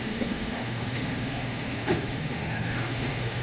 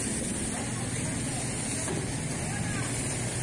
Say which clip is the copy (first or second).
first